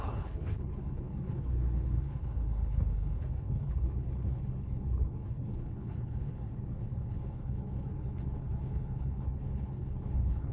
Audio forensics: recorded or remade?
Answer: remade